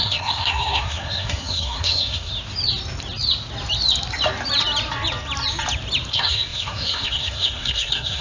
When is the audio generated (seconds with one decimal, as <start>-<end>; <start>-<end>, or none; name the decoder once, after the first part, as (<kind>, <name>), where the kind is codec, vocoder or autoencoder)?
0.0-2.3 (codec, SNAC); 6.1-8.2